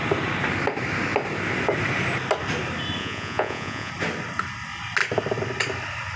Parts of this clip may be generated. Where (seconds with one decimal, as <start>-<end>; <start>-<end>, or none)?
3.0-3.9